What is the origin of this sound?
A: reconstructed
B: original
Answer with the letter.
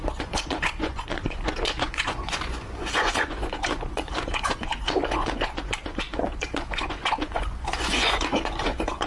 A